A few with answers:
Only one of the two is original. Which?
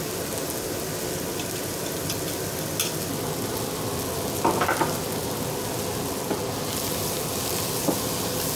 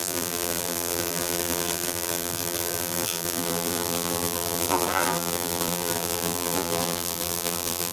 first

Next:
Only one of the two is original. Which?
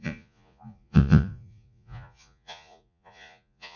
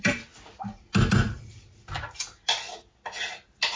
second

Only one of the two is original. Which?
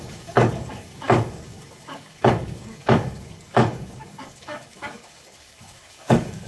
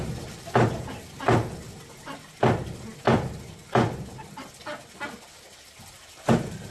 second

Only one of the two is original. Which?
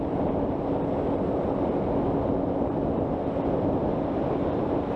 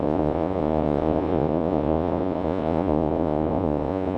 first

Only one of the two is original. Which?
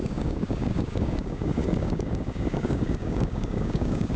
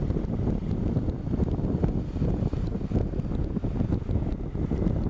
second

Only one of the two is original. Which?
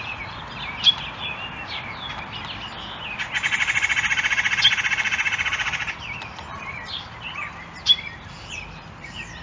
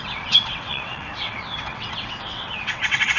first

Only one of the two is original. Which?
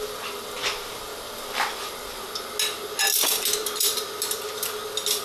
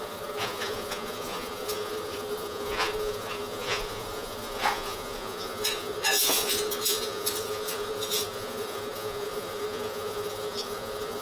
first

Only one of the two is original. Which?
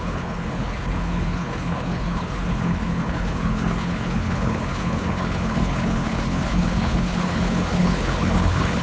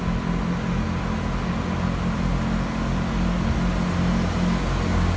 second